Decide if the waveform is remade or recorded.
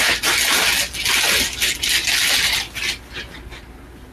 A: recorded